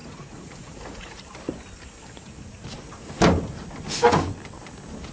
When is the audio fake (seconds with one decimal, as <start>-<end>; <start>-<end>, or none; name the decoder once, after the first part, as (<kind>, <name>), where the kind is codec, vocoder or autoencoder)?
0.0-1.2 (vocoder, Vocos)